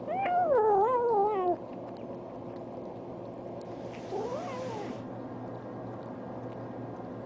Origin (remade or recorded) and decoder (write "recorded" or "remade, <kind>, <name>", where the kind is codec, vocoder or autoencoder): recorded